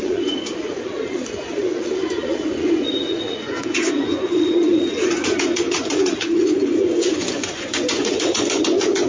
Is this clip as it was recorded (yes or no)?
no